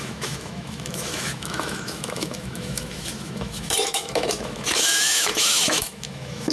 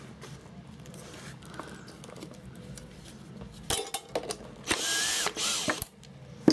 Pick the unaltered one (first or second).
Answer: second